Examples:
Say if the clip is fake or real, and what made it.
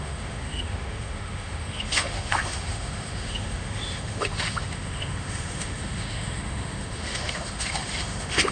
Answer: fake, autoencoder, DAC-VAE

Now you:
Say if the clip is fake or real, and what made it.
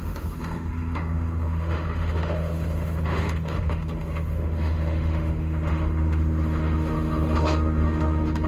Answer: fake, autoencoder, DAC-VAE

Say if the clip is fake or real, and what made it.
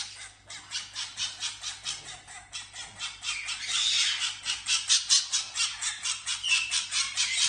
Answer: real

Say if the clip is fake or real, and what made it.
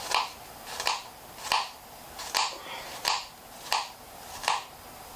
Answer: real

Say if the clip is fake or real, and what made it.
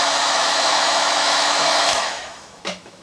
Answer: fake, autoencoder, DAC-VAE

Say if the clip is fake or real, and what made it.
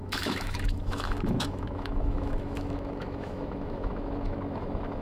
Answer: fake, autoencoder, DAC-VAE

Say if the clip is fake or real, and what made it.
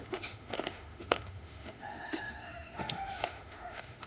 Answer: fake, autoencoder, DAC-VAE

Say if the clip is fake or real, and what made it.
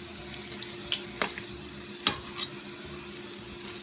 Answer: real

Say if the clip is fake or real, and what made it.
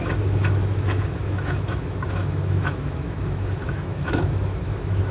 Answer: fake, autoencoder, DAC-VAE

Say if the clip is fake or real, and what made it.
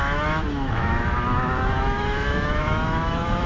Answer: fake, autoencoder, DAC-VAE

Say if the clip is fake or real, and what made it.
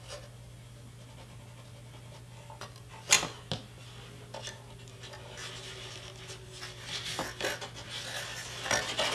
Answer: real